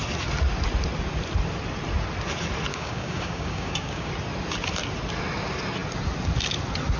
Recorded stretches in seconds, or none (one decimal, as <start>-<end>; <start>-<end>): 0.0-2.7; 4.1-7.0